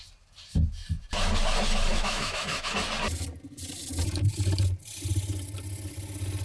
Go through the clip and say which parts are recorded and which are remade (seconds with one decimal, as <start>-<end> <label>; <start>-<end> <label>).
0.0-1.9 recorded; 1.9-2.7 remade; 2.7-6.4 recorded